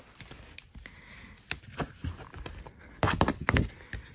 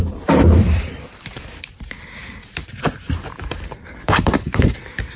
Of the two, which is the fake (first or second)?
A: second